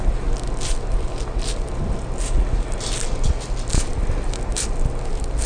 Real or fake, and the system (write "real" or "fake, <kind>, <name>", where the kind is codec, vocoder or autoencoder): real